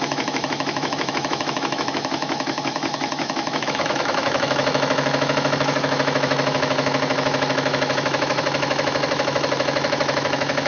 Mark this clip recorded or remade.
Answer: remade